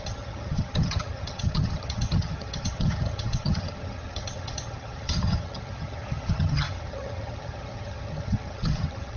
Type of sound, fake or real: fake